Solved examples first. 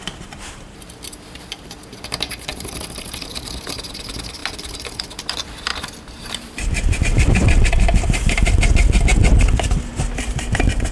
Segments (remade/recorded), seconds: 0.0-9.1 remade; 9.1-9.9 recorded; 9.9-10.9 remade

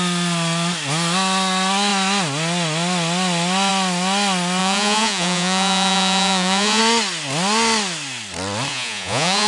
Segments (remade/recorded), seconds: 0.0-4.6 recorded; 4.6-6.8 remade; 6.8-8.7 recorded; 8.7-9.5 remade

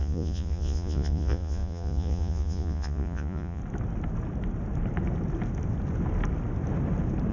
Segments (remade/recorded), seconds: 0.0-3.6 remade; 3.6-7.3 recorded

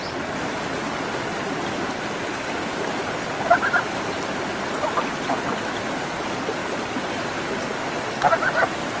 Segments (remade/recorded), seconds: 0.0-9.0 recorded

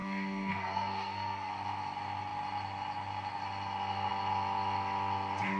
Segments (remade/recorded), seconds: 0.0-1.5 remade; 1.5-5.6 recorded

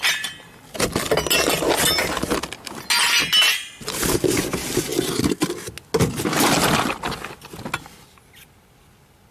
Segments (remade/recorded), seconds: 0.0-9.3 recorded

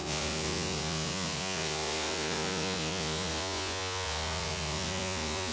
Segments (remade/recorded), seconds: 0.0-5.5 remade

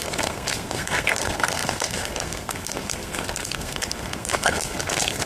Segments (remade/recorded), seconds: 0.0-5.3 remade